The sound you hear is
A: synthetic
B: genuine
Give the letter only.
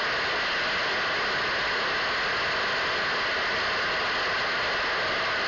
B